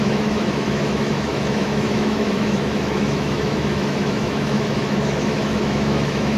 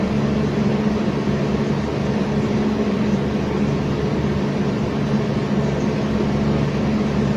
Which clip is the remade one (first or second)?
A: first